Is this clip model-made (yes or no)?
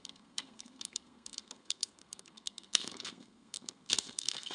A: yes